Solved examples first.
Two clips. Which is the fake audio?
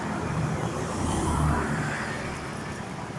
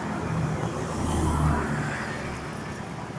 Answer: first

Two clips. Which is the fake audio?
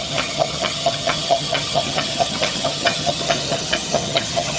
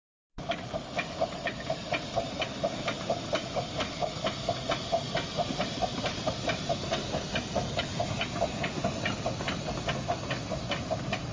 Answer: first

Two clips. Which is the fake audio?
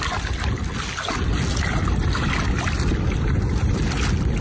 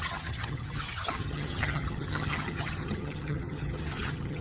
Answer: second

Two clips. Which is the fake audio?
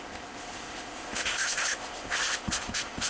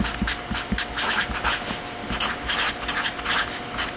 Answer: first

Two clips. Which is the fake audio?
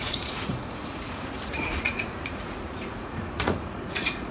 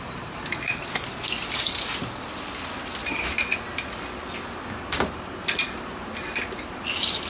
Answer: first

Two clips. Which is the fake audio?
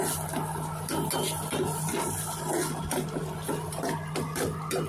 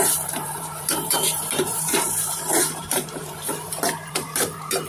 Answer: second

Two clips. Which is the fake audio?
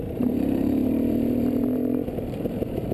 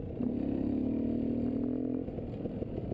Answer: first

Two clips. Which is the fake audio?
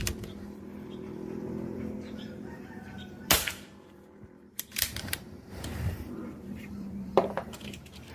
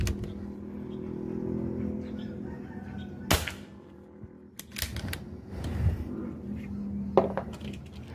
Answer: first